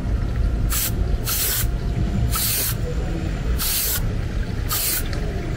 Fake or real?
real